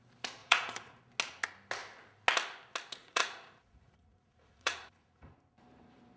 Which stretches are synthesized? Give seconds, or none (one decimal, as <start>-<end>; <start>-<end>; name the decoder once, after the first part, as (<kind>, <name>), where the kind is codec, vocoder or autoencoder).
0.4-1.0 (vocoder, Vocos); 3.0-5.3